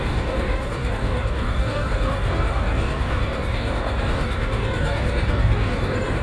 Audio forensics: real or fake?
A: fake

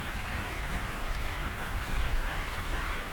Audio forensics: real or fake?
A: fake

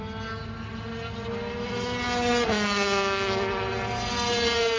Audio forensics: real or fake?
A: real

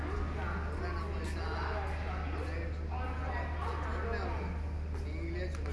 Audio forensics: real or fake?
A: real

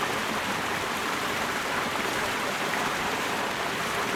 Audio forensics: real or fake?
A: real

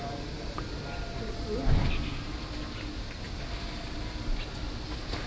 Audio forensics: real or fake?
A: real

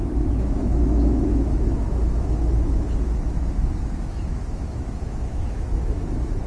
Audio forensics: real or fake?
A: fake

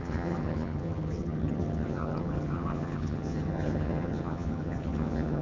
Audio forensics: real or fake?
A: fake